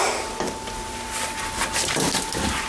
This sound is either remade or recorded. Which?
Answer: recorded